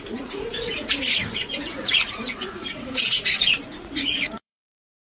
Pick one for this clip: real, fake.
fake